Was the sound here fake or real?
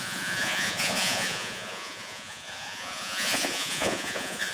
fake